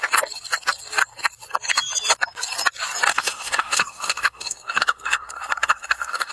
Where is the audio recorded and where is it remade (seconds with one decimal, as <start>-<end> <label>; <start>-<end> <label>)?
0.0-3.1 recorded; 3.1-6.3 remade